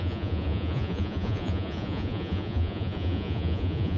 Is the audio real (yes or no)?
no